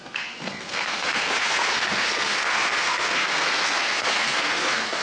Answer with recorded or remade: remade